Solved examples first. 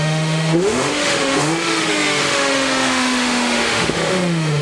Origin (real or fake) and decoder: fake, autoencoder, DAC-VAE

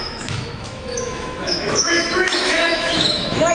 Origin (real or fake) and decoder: fake, autoencoder, DAC-VAE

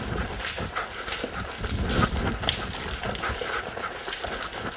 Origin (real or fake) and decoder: real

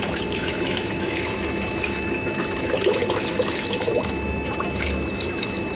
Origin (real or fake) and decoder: fake, autoencoder, DAC-VAE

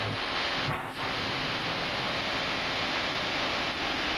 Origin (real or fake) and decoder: real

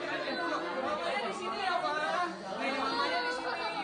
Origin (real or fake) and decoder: real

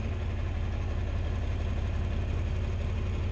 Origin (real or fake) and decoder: real